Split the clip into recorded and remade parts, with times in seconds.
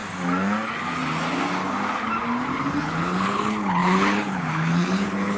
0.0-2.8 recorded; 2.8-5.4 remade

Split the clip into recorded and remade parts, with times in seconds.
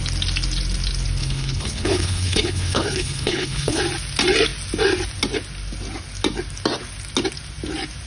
0.0-1.2 recorded; 1.2-3.8 remade; 3.8-8.1 recorded